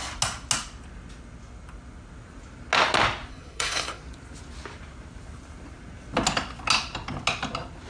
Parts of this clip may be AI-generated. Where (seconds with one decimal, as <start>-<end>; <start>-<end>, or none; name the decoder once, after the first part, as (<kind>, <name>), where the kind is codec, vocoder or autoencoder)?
3.3-4.0 (codec, SNAC)